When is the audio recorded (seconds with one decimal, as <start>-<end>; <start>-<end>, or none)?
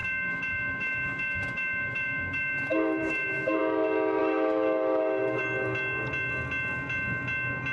3.6-4.2; 5.4-7.7